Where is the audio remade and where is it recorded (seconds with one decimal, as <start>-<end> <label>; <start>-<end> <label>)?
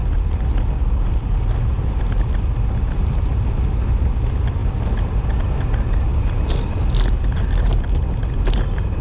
0.0-9.0 recorded